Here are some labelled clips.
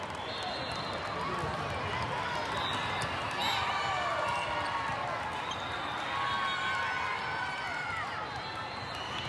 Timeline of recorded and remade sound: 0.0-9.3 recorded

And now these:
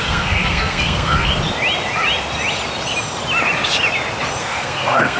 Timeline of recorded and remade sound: 0.0-1.3 remade; 1.3-4.4 recorded; 4.4-5.2 remade

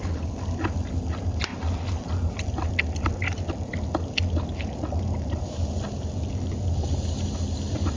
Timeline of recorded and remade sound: 0.0-8.0 recorded